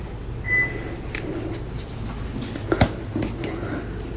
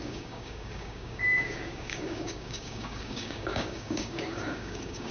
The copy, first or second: second